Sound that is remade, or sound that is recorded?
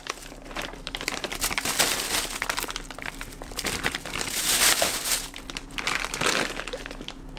remade